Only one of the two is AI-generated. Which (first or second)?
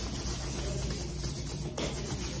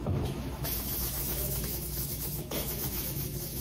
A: second